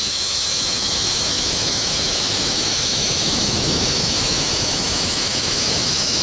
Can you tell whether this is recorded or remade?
remade